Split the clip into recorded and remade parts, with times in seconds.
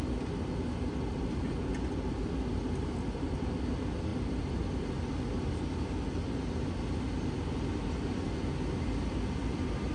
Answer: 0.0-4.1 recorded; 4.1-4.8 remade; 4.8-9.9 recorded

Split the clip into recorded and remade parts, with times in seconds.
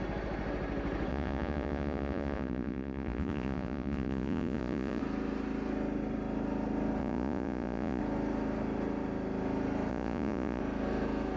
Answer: 0.0-1.1 recorded; 1.1-5.0 remade; 5.0-7.0 recorded; 7.0-8.0 remade; 8.0-9.9 recorded; 9.9-10.6 remade; 10.6-11.4 recorded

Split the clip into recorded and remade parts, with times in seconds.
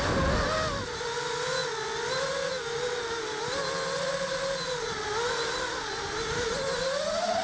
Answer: 0.0-7.4 recorded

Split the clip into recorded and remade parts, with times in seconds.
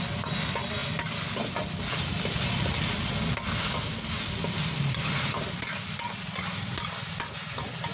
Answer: 0.0-7.9 recorded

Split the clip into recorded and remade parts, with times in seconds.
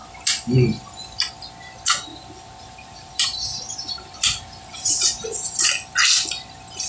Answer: 0.0-2.1 recorded; 2.1-5.7 remade; 5.7-6.9 recorded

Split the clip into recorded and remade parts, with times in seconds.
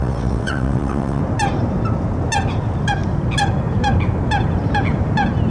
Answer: 0.0-1.2 remade; 1.2-5.5 recorded